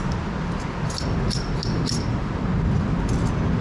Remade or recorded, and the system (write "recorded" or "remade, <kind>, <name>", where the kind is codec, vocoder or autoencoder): recorded